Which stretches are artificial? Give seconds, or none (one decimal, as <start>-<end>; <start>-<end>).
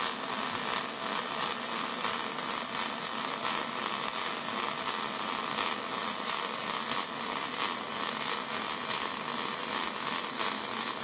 none